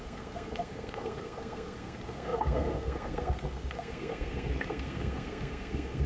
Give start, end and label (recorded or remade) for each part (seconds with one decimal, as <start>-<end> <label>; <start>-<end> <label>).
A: 0.0-6.1 remade